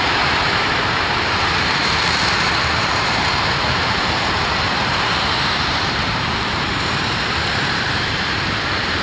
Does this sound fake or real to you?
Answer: fake